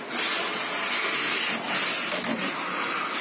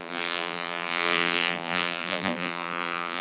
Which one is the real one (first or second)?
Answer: first